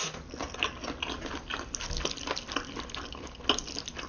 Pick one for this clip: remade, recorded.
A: recorded